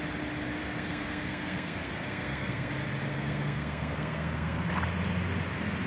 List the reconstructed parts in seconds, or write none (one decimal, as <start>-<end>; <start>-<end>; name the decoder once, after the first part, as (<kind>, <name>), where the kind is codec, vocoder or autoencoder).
0.6-2.7 (codec, SNAC); 3.1-4.7